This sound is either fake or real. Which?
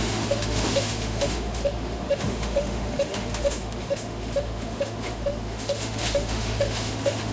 fake